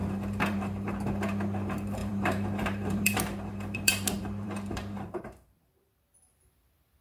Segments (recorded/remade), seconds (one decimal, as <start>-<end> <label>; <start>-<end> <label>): 0.0-0.9 remade; 0.9-2.0 recorded; 2.0-5.2 remade; 5.2-7.0 recorded